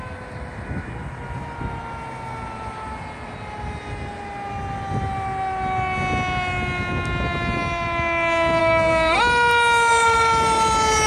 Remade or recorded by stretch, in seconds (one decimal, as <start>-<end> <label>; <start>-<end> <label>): 0.0-8.6 recorded; 8.6-9.2 remade; 9.2-11.1 recorded